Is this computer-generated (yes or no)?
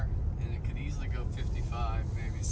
no